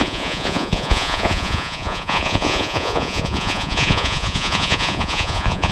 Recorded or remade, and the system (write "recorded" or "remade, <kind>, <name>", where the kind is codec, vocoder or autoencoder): remade, vocoder, Vocos